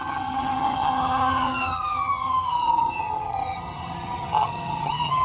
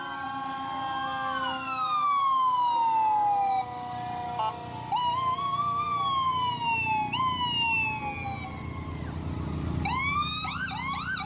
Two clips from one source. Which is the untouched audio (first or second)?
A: second